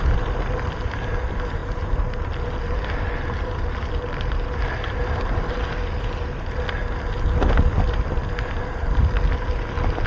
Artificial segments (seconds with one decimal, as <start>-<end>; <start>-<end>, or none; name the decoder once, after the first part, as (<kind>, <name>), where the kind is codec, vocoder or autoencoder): none